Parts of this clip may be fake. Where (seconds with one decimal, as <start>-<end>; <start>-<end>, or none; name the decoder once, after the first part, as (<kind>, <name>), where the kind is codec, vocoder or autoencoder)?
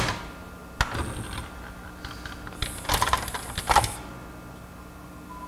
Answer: none